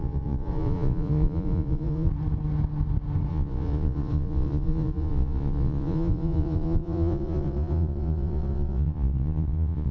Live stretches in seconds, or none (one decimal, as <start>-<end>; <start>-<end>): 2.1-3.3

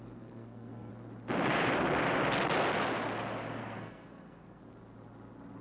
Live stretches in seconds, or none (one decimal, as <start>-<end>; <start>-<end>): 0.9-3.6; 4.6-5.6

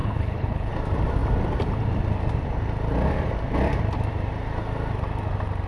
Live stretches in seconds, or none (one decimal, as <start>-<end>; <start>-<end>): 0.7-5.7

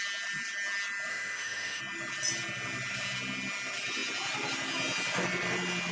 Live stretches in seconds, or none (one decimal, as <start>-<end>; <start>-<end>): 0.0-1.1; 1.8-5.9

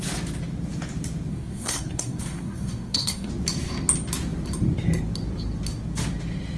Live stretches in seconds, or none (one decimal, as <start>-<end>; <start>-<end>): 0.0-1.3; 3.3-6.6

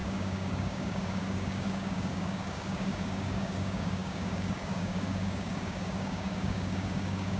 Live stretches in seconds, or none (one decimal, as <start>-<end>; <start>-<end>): none